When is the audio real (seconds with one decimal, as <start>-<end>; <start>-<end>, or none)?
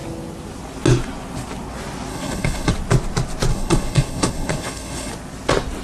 0.0-2.1; 2.7-3.5; 5.1-5.8